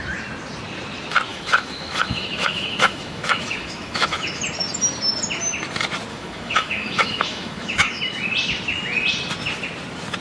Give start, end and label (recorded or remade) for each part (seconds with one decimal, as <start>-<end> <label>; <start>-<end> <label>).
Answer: 0.0-1.3 recorded; 1.3-4.4 remade; 4.4-6.1 recorded; 6.1-8.0 remade; 8.0-10.2 recorded